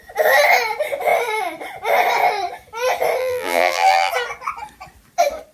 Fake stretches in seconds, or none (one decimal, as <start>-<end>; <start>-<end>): 3.2-4.1